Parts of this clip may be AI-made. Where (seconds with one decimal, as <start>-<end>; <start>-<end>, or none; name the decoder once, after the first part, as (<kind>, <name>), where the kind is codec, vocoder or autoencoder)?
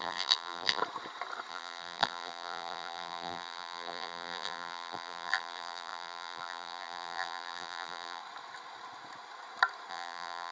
0.0-0.8 (vocoder, BigVGAN v2); 1.5-8.2; 9.9-10.5